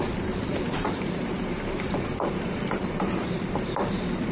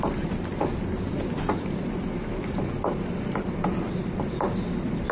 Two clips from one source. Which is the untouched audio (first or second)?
second